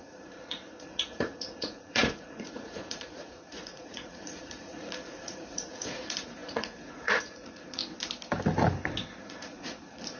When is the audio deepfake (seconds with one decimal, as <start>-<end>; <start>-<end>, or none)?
0.0-7.8; 9.2-10.2